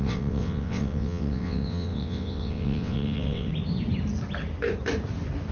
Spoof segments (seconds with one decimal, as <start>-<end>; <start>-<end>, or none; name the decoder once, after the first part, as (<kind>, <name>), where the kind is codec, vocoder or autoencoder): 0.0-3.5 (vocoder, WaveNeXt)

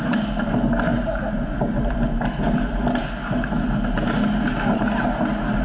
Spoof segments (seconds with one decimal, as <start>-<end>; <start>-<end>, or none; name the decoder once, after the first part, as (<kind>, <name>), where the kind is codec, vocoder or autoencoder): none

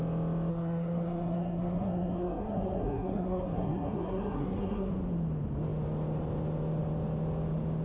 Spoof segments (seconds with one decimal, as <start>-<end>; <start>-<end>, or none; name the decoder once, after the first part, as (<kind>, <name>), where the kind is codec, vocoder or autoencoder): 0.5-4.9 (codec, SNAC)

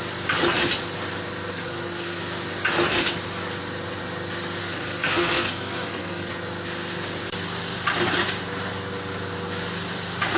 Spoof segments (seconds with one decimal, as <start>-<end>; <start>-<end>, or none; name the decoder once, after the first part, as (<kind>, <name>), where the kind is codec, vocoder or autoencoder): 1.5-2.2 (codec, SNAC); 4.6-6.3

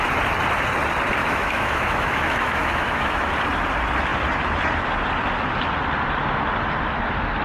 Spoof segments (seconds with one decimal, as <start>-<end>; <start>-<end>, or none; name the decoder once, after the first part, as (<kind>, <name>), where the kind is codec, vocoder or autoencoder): 1.2-3.3 (autoencoder, DAC-VAE)